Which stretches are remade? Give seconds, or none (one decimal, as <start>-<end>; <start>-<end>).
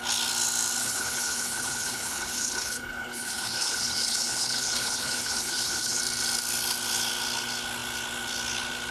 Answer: 0.8-6.0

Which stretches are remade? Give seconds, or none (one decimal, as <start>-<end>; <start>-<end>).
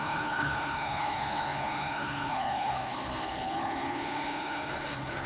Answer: 0.0-5.3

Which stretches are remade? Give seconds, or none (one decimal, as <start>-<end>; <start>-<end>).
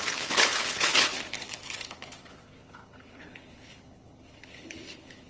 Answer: 0.0-5.3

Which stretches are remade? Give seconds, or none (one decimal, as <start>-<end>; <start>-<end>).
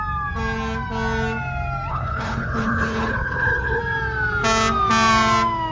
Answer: 1.9-3.8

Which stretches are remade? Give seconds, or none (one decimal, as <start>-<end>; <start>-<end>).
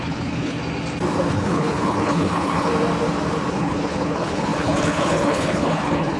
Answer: 0.0-0.6; 1.3-2.7; 3.5-6.2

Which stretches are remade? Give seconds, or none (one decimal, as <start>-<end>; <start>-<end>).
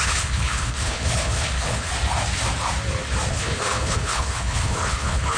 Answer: 0.0-1.9; 3.3-5.4